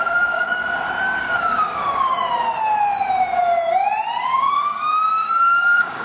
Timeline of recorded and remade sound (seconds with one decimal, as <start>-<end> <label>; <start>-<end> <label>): 0.0-0.6 remade; 0.6-1.2 recorded; 1.2-2.1 remade; 2.1-4.2 recorded; 4.2-6.0 remade